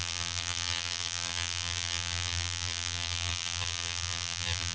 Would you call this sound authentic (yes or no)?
no